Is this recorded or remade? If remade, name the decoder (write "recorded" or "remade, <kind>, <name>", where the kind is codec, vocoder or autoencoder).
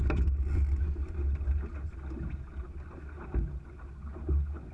recorded